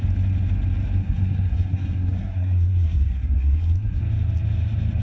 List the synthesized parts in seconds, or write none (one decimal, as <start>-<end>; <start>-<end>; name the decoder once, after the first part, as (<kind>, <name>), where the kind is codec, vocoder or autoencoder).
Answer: 1.0-4.0 (codec, SNAC)